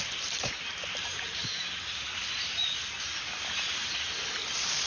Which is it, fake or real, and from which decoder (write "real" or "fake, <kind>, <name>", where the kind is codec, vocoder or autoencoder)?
real